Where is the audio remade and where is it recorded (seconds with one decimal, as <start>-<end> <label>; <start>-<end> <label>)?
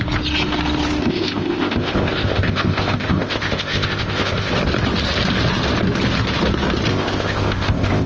0.0-1.0 recorded; 1.0-4.5 remade; 4.5-6.9 recorded; 6.9-8.1 remade